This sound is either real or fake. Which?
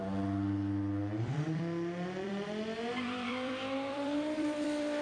fake